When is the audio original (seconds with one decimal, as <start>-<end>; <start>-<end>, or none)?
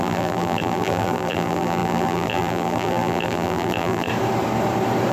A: 4.1-5.1